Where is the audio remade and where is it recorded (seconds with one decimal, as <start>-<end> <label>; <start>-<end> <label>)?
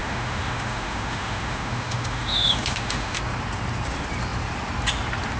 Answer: 0.0-3.2 remade; 3.2-5.4 recorded